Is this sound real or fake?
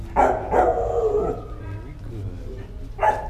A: real